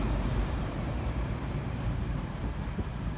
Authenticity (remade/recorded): remade